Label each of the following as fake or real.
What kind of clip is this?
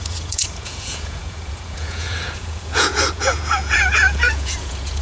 fake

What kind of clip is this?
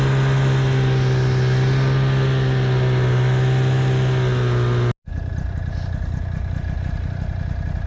real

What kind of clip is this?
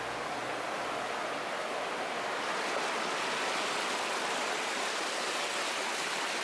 real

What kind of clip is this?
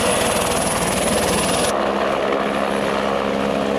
real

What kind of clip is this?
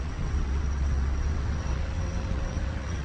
fake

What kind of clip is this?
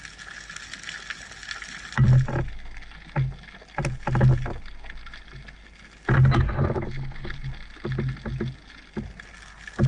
real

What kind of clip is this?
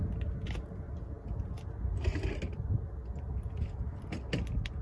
real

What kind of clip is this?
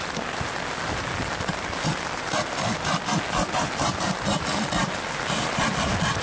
real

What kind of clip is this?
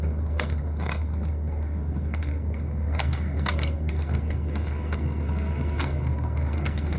fake